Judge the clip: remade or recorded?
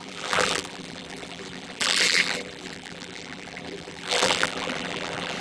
remade